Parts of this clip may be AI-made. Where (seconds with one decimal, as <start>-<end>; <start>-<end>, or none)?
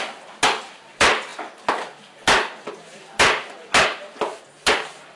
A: none